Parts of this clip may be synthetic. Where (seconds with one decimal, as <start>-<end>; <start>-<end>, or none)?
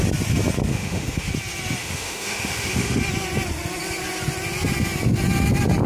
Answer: 0.7-1.3; 1.8-3.0